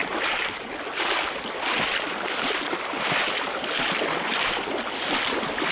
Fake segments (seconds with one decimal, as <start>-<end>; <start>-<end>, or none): 0.0-0.7